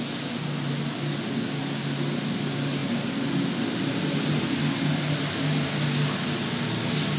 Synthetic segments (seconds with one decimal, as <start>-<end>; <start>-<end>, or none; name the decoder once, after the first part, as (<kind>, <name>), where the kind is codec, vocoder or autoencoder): none